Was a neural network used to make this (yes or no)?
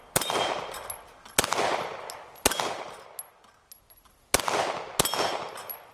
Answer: no